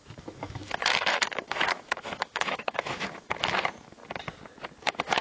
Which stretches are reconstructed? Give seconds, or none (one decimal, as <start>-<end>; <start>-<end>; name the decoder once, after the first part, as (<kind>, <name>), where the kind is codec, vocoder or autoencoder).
0.0-4.0 (autoencoder, DAC-VAE); 4.8-5.2